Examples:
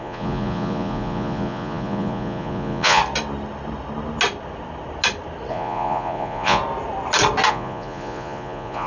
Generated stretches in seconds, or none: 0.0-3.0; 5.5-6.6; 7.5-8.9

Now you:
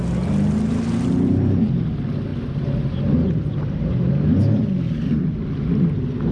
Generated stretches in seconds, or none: none

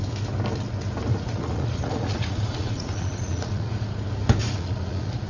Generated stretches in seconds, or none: 1.1-3.9; 4.4-5.3

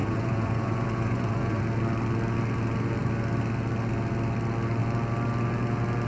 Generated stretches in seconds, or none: 0.0-1.6

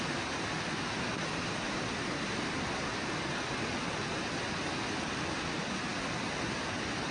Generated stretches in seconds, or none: none

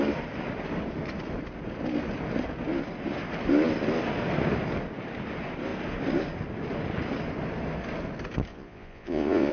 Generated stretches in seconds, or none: 8.5-9.5